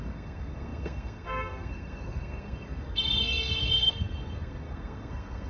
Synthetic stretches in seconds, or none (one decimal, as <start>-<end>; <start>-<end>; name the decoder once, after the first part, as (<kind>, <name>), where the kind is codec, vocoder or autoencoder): 0.0-5.5 (codec, SNAC)